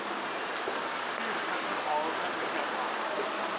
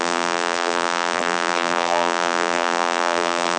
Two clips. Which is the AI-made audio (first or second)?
second